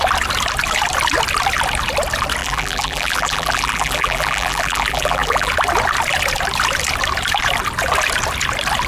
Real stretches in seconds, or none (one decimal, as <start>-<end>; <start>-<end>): 0.0-2.4; 5.5-8.9